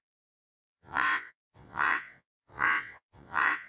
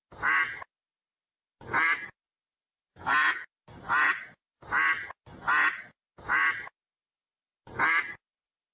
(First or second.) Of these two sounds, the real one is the second